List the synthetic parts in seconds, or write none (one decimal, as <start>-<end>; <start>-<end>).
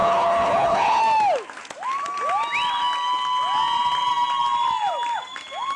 0.0-1.0